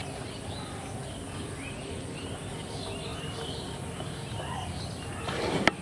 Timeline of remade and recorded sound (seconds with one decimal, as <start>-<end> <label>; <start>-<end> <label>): 0.0-5.8 recorded